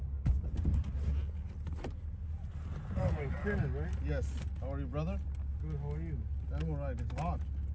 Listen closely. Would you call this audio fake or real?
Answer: real